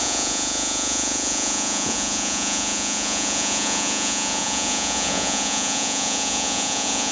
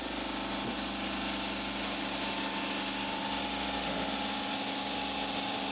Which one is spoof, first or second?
first